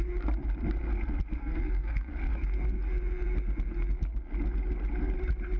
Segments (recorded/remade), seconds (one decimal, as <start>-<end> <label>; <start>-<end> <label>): 0.0-1.4 recorded; 1.4-2.1 remade; 2.1-5.6 recorded